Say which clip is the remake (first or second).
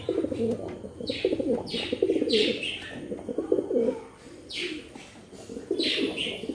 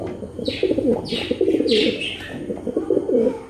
first